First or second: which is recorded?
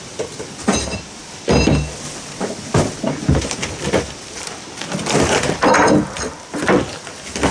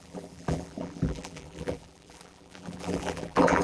first